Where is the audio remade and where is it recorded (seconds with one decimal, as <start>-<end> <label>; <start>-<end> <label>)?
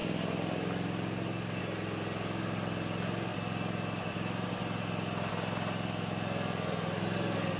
0.0-7.6 recorded